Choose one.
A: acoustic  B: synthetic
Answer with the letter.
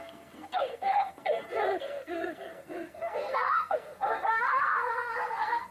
B